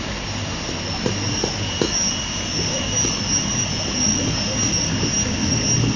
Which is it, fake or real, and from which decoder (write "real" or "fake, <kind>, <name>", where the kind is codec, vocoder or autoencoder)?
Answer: real